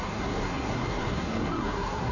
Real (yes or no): no